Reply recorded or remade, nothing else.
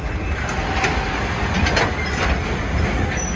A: recorded